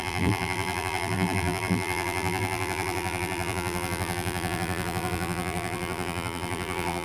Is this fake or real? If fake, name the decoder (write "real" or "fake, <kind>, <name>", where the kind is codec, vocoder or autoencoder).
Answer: fake, vocoder, BigVGAN v2